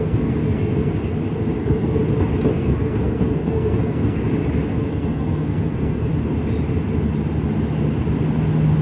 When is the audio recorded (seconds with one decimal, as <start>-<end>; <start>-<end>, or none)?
0.9-1.6; 2.0-2.5; 4.3-4.8; 6.1-8.8